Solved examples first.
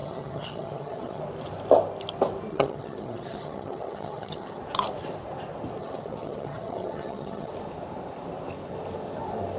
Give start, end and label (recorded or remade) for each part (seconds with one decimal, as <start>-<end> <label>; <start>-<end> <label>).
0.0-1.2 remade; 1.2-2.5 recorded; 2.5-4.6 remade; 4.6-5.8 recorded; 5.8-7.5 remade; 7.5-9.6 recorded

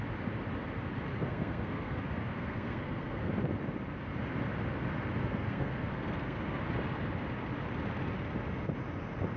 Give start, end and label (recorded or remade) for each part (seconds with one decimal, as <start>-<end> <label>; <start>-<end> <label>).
0.0-1.1 recorded; 1.1-3.3 remade; 3.3-5.2 recorded; 5.2-6.6 remade; 6.6-9.4 recorded

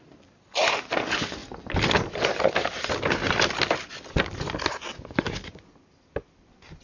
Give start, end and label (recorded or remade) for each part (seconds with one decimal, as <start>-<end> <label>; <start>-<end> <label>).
0.0-6.8 recorded

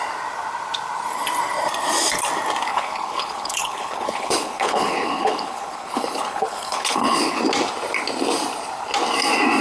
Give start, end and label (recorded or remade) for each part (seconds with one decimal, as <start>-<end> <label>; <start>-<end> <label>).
0.0-2.7 recorded; 2.7-7.4 remade; 7.4-9.6 recorded

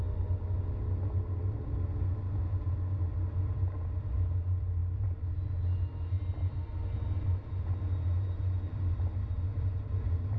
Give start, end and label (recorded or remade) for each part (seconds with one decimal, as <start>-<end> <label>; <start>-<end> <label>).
0.0-9.5 recorded; 9.5-10.4 remade

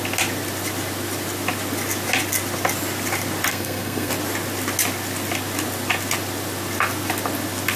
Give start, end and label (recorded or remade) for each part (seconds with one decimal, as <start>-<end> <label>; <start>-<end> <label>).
0.0-3.5 recorded; 3.5-4.1 remade; 4.1-7.8 recorded

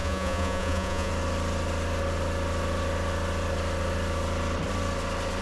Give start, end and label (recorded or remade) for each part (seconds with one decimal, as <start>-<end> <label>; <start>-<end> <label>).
0.0-1.1 remade; 1.1-5.4 recorded